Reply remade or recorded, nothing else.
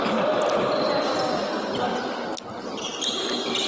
recorded